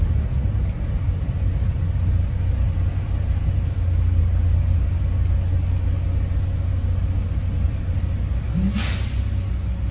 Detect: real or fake real